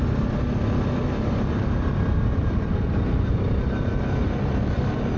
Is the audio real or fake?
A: real